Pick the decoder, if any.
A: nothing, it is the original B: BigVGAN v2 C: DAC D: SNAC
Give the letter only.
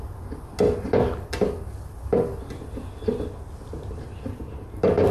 A